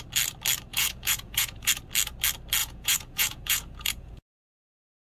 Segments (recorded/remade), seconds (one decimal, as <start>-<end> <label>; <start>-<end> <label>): 0.0-0.7 recorded; 0.7-1.7 remade; 1.7-2.6 recorded; 2.6-4.6 remade; 4.6-5.2 recorded